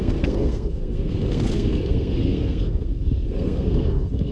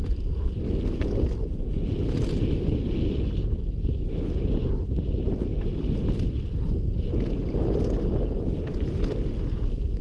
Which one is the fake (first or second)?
first